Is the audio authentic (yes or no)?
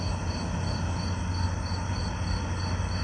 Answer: yes